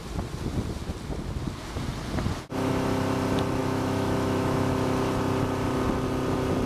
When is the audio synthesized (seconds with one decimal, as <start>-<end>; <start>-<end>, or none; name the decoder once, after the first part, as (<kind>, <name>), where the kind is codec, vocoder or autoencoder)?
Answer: 3.6-4.7 (autoencoder, DAC-VAE)